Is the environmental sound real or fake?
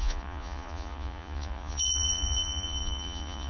fake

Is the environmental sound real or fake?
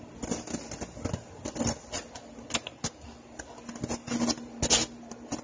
real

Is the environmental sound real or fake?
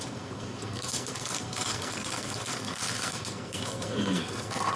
fake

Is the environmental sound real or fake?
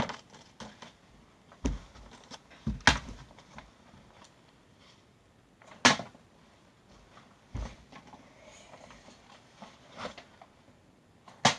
real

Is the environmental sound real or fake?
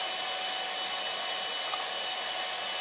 real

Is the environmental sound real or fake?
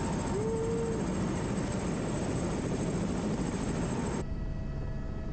real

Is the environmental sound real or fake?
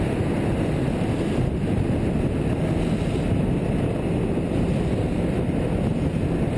real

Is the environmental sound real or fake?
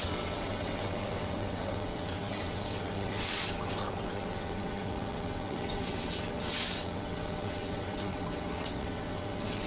fake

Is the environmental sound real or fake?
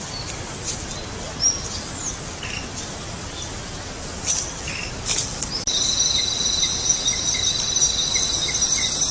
real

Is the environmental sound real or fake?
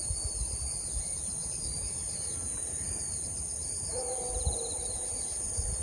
real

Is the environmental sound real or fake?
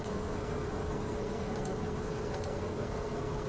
fake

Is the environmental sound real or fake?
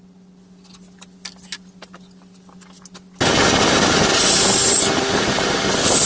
real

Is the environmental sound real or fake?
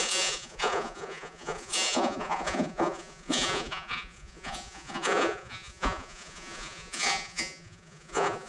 fake